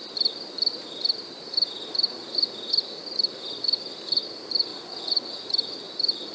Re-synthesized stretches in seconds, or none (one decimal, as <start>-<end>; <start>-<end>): 4.7-5.3

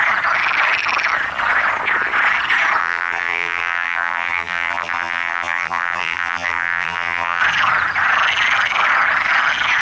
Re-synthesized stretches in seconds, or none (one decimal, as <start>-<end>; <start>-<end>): 2.8-7.4

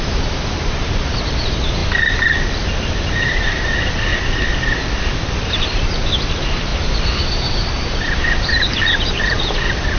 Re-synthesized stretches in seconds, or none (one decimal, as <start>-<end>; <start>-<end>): 0.0-1.8; 3.4-4.1; 5.5-6.7; 7.8-10.0

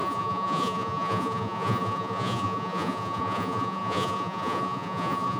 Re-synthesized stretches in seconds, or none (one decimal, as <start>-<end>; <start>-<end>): 0.0-5.4

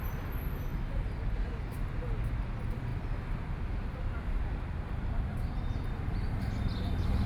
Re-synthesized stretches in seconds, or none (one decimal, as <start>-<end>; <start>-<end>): 0.7-1.5; 2.9-5.6